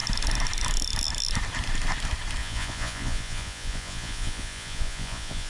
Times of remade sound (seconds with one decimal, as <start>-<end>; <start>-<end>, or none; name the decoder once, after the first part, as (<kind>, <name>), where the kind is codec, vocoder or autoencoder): 2.4-5.5 (vocoder, Vocos)